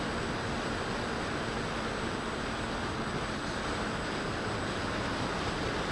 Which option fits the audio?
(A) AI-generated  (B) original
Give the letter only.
B